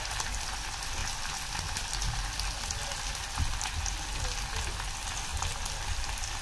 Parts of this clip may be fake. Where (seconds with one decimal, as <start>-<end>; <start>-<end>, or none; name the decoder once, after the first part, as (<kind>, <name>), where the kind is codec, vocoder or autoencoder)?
none